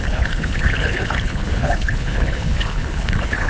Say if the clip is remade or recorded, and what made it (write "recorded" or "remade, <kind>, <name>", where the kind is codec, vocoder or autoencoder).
remade, codec, HILCodec